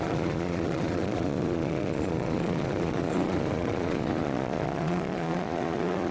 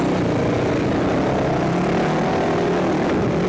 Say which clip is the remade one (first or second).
first